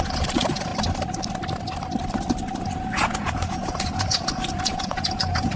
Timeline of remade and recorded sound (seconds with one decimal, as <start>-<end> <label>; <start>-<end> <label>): 0.0-0.7 remade; 0.7-2.6 recorded; 2.6-5.6 remade